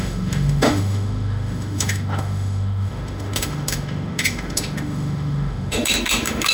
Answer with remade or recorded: remade